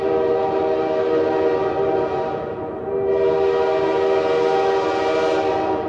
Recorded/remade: recorded